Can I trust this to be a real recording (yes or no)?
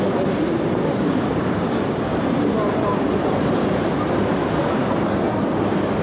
yes